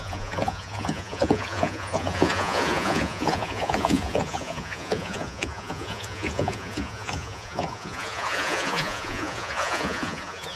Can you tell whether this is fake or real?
fake